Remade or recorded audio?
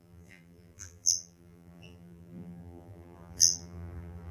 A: remade